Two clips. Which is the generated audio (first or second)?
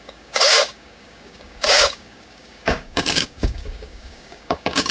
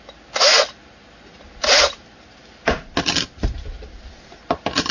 first